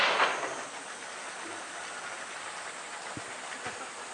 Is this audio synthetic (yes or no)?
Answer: no